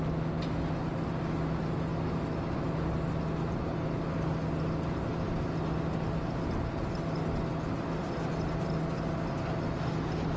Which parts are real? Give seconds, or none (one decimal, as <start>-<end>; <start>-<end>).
0.0-1.9; 2.6-10.4